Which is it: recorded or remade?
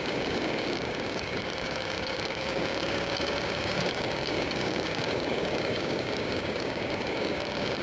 remade